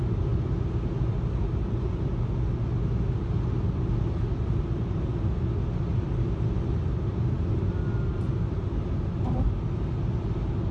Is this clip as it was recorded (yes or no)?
yes